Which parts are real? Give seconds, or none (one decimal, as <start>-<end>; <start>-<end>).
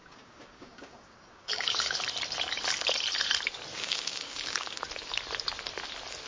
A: 2.0-3.7; 4.8-6.3